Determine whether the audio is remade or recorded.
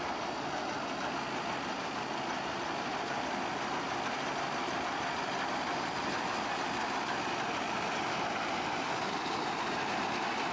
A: recorded